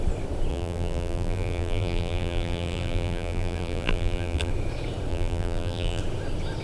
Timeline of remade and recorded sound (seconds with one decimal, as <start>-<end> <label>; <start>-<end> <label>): 0.0-0.5 recorded; 0.5-4.5 remade; 4.5-5.1 recorded; 5.1-6.0 remade; 6.0-6.6 recorded